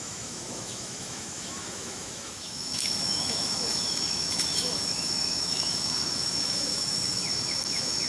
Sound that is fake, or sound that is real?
fake